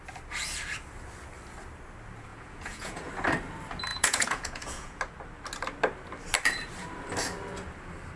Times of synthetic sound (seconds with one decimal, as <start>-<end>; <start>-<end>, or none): 2.3-3.1; 3.9-5.0